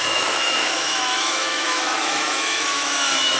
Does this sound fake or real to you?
fake